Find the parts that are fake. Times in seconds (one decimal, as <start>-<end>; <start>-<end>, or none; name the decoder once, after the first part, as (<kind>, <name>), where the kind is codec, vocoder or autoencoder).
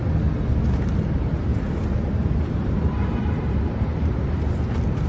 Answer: 1.5-4.6 (vocoder, BigVGAN v2)